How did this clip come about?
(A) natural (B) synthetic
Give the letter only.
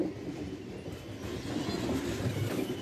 A